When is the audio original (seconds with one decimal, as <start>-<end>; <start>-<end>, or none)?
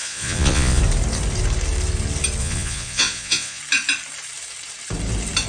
0.8-2.4; 3.6-5.5